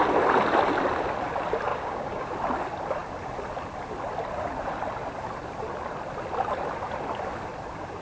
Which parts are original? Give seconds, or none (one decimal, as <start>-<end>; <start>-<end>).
0.0-1.7; 2.3-8.0